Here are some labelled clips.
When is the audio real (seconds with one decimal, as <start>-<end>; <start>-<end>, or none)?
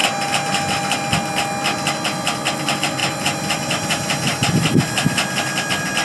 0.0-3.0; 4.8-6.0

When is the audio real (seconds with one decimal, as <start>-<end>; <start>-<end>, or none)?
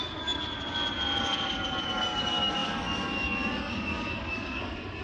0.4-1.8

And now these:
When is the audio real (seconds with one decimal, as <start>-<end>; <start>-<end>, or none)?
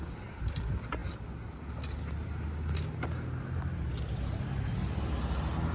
0.0-5.7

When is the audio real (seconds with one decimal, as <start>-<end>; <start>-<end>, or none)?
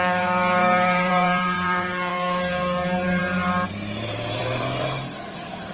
none